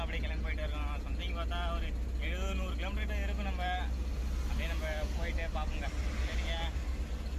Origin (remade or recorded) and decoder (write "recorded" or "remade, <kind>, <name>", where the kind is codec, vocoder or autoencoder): recorded